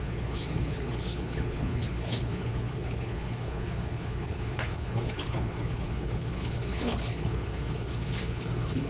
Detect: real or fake fake